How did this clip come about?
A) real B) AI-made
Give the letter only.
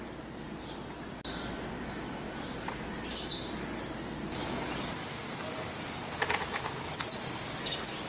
A